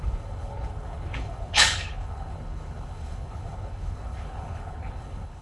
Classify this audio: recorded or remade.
remade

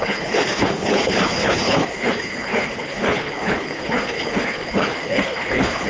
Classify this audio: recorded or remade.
remade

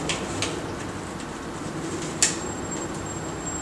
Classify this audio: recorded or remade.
recorded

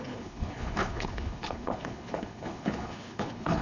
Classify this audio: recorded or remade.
remade